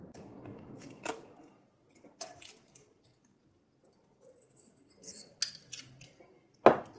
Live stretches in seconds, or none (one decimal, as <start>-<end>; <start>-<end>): 0.0-7.0